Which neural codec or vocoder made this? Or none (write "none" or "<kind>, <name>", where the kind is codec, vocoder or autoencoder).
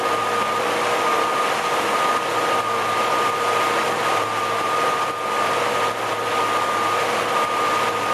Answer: none